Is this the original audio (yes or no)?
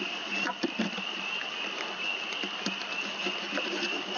yes